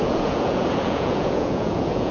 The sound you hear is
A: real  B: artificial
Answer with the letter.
B